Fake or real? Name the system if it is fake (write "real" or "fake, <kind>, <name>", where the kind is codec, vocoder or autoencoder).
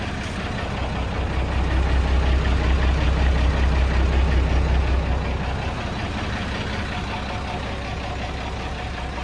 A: real